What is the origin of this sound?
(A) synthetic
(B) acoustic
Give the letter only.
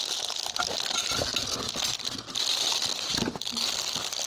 B